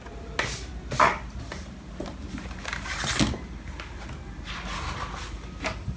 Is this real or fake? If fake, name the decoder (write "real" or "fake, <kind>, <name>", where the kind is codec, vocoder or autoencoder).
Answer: real